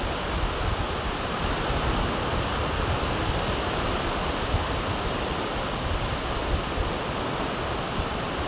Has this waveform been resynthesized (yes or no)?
no